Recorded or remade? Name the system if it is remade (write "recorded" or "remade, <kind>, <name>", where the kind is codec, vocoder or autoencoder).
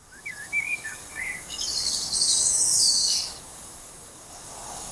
remade, codec, DAC